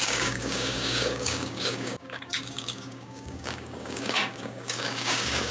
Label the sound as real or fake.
fake